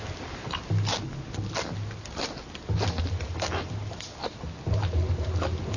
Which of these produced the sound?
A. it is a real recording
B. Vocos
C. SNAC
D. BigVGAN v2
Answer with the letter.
A